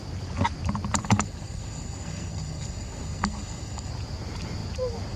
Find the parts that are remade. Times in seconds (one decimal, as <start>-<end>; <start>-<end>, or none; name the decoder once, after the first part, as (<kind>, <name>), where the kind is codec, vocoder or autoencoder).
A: 1.0-3.9 (codec, SNAC)